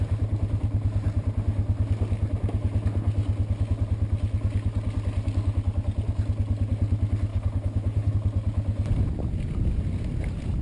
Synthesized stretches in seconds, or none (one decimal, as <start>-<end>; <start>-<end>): 7.3-8.1